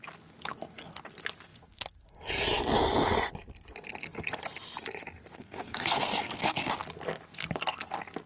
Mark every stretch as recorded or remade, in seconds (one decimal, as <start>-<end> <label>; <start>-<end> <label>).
0.0-5.3 recorded; 5.3-6.7 remade; 6.7-8.3 recorded